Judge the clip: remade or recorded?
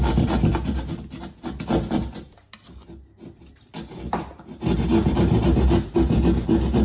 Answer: recorded